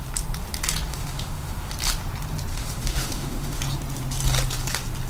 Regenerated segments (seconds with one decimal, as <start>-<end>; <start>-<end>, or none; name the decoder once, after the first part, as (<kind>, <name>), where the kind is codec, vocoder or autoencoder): 0.9-1.7 (autoencoder, DAC-VAE); 2.5-3.6